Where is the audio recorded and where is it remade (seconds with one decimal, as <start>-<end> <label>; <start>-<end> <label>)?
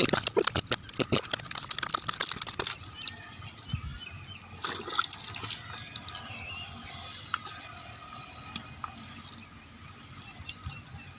0.0-11.2 recorded